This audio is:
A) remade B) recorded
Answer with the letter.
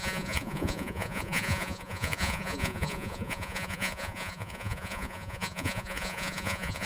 A